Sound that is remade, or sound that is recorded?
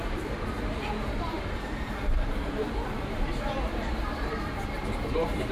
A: remade